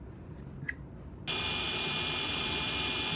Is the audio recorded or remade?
recorded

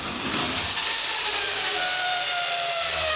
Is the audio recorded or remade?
remade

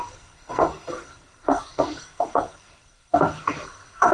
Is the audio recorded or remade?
remade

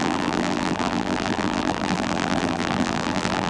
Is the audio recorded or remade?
remade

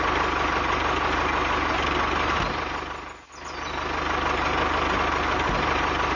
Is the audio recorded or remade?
recorded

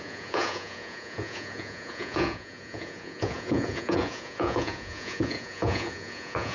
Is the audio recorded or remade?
remade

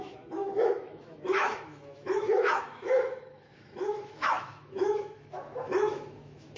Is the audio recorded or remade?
remade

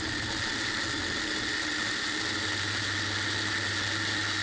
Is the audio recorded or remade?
recorded